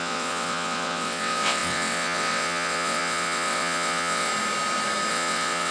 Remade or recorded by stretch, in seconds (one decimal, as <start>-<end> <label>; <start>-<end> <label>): 0.0-4.3 remade; 4.3-5.1 recorded; 5.1-5.7 remade